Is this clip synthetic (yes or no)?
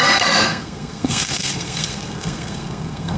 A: yes